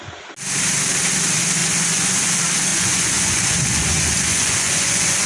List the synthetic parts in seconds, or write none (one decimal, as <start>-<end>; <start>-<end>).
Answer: 1.6-2.3; 2.7-5.3